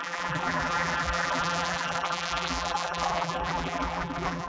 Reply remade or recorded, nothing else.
remade